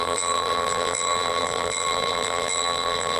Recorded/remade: remade